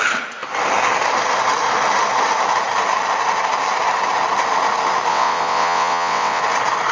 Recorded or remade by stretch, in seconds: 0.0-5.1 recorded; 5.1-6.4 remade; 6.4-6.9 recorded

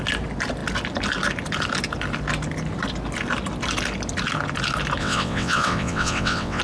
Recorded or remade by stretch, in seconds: 0.0-5.0 recorded; 5.0-6.6 remade

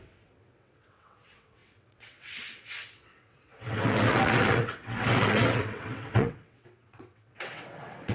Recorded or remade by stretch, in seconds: 0.0-8.1 remade

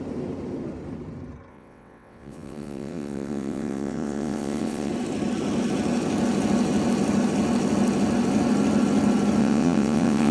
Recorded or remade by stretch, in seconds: 0.0-1.5 recorded; 1.5-4.9 remade; 4.9-9.4 recorded; 9.4-10.3 remade